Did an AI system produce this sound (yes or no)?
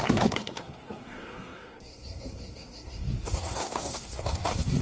yes